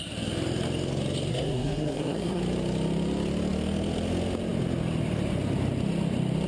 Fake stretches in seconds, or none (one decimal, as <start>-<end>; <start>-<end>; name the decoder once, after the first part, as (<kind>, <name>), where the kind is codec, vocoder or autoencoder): 1.3-2.4 (codec, SNAC)